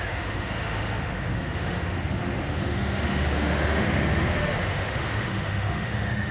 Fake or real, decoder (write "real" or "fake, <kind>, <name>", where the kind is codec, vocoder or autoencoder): fake, autoencoder, DAC-VAE